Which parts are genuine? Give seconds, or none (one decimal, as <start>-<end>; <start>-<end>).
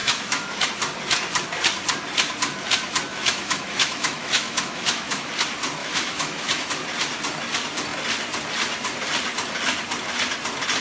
0.7-3.1; 5.3-5.8; 6.7-10.8